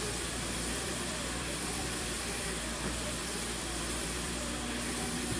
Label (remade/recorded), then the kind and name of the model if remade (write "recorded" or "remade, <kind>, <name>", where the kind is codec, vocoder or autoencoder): remade, vocoder, BigVGAN v2